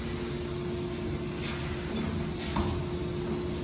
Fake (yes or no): no